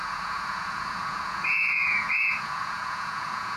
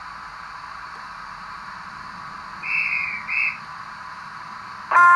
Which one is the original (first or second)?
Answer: second